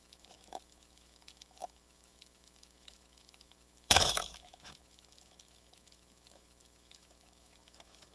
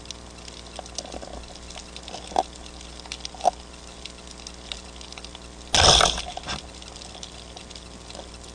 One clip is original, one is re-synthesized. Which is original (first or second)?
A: second